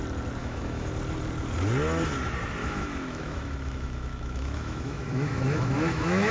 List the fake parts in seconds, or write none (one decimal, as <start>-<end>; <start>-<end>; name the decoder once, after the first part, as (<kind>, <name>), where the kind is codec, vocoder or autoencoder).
0.4-0.9 (autoencoder, DAC-VAE); 2.6-6.3